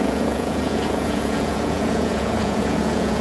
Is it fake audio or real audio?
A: fake